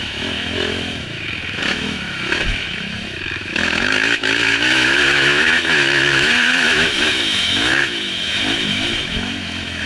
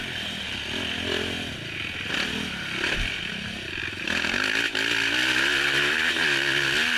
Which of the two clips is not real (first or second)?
first